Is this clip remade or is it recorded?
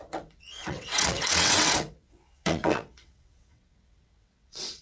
remade